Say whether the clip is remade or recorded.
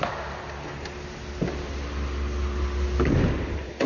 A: recorded